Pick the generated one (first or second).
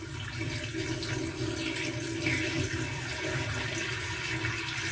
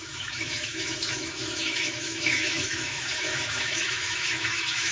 second